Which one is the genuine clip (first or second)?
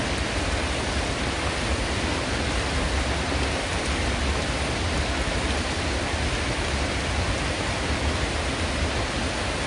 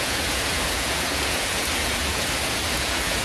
first